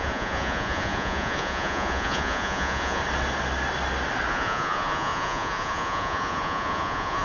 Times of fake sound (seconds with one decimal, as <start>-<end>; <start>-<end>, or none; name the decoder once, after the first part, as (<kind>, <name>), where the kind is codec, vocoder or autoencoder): 0.0-3.0 (vocoder, Vocos); 4.3-7.2